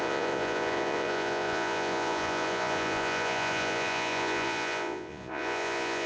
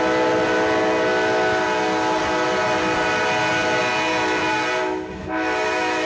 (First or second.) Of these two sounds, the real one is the second